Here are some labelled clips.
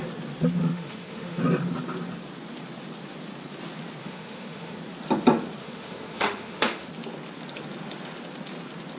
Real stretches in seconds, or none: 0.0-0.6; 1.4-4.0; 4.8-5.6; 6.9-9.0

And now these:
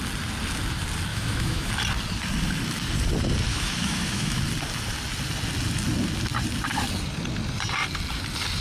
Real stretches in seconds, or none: 0.0-1.1; 1.7-3.5; 4.4-8.6

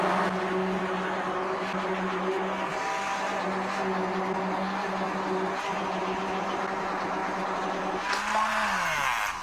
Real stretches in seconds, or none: 0.0-9.4

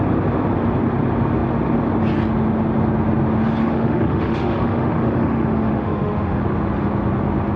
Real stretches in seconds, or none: 0.0-3.6; 6.4-7.6

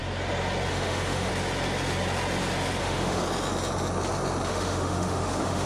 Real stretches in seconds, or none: 0.0-0.7; 1.3-2.8; 3.2-4.5

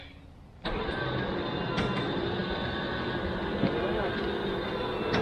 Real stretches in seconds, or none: 0.0-5.2

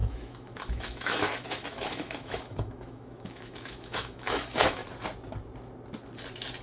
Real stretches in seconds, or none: 4.8-6.6